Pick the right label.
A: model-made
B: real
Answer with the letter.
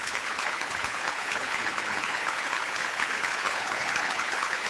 A